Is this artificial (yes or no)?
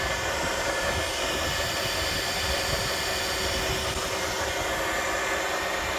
no